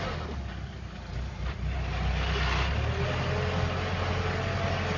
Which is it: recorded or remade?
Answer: recorded